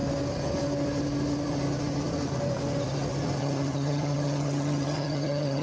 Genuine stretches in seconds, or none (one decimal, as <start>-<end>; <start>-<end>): 0.0-3.4